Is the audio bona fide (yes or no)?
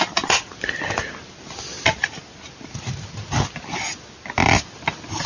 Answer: yes